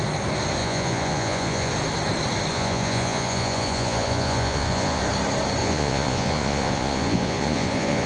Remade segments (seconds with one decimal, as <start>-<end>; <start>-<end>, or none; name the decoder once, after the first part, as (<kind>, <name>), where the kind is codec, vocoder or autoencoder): 0.6-1.7 (vocoder, Vocos); 2.5-5.0; 5.6-8.1